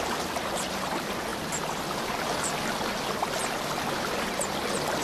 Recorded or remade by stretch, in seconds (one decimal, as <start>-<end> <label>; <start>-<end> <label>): 0.0-5.0 recorded